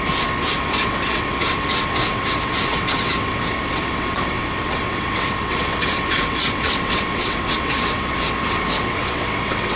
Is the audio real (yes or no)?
no